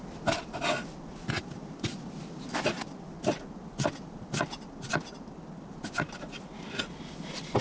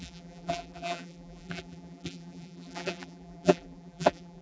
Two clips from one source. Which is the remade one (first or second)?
second